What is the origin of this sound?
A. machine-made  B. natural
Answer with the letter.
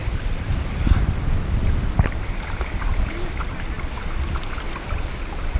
B